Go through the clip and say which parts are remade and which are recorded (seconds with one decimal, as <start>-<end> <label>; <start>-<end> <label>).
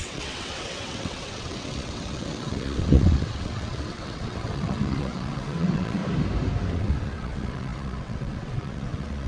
0.0-6.0 remade; 6.0-6.7 recorded; 6.7-9.3 remade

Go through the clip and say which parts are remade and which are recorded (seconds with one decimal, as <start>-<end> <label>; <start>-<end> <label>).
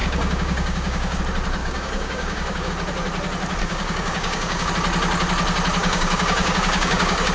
0.0-1.2 remade; 1.2-1.6 recorded; 1.6-2.7 remade; 2.7-3.6 recorded; 3.6-4.7 remade; 4.7-5.8 recorded; 5.8-7.3 remade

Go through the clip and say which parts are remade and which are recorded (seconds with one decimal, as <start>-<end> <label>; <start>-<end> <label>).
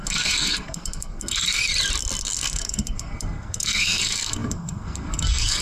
0.0-1.6 remade; 1.6-2.2 recorded; 2.2-5.6 remade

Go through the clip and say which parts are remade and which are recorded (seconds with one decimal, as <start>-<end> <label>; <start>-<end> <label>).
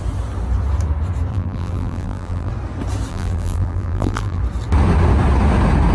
0.0-1.3 recorded; 1.3-2.5 remade; 2.5-3.1 recorded; 3.1-4.4 remade; 4.4-5.9 recorded